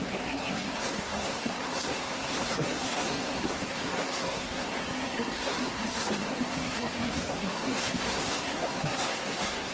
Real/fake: fake